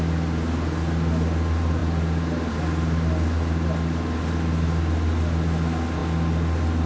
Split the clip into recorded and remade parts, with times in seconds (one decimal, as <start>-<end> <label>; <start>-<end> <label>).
0.0-6.9 recorded